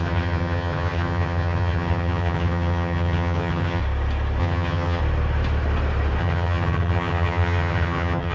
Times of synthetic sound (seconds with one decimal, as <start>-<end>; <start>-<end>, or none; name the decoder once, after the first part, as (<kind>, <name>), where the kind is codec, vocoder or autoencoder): 0.0-3.8 (vocoder, HiFi-GAN); 4.4-5.0; 6.2-8.3